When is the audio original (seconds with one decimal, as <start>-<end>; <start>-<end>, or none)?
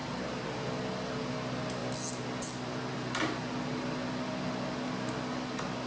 0.8-5.9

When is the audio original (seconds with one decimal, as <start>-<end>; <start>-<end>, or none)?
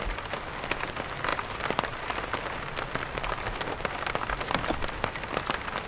0.0-5.9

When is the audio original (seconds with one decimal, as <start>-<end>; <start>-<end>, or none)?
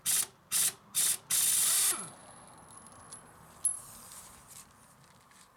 0.0-5.6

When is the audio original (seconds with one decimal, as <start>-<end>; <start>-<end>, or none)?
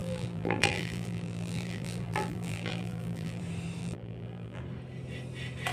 3.4-3.8; 4.6-5.7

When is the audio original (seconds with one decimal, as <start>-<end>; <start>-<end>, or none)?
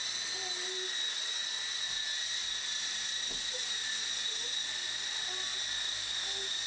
0.0-2.8; 3.9-6.7